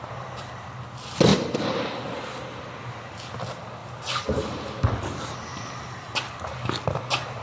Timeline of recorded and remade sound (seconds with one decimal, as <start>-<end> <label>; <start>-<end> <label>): 0.0-7.4 recorded

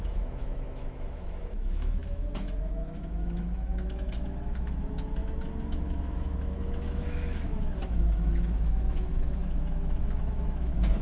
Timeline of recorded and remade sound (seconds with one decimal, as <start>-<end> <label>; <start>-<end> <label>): 0.0-11.0 remade

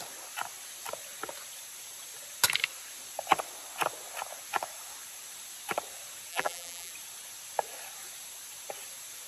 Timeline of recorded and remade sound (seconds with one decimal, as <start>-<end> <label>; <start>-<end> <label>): 0.0-6.3 recorded; 6.3-6.9 remade; 6.9-9.3 recorded

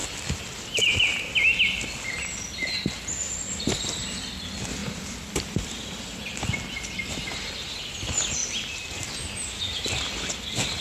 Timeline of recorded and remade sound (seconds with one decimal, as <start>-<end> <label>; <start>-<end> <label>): 0.0-10.8 recorded

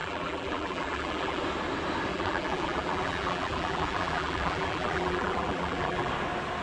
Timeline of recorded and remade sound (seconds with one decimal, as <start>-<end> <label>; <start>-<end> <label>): 0.0-1.4 remade; 1.4-2.1 recorded; 2.1-6.1 remade; 6.1-6.6 recorded

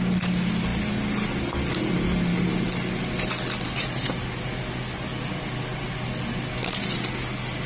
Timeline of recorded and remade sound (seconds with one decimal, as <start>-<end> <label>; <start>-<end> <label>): 0.0-7.7 recorded

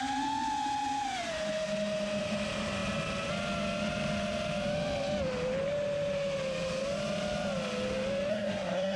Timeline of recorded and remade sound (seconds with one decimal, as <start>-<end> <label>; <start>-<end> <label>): 0.0-8.3 recorded; 8.3-9.0 remade